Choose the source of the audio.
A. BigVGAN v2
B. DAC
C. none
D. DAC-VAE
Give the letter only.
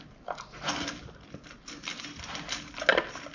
C